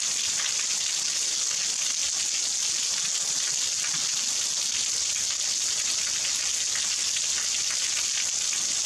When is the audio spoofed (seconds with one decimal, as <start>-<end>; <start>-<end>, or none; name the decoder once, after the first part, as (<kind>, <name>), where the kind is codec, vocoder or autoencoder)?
none